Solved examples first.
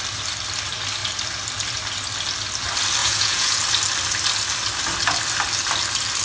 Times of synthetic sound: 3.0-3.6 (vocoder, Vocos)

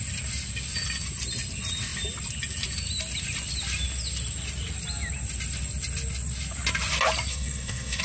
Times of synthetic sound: 7.3-8.0 (codec, SNAC)

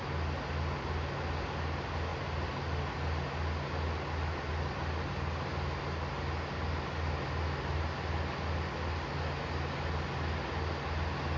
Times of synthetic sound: none

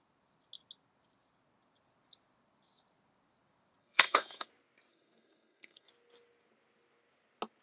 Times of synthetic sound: 3.8-4.5 (codec, SNAC); 4.9-5.9